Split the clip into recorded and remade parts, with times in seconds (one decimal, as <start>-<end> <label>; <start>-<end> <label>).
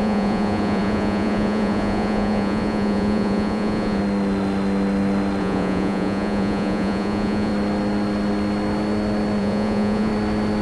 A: 0.0-4.0 remade; 4.0-5.4 recorded; 5.4-7.5 remade; 7.5-9.4 recorded; 9.4-10.1 remade; 10.1-10.6 recorded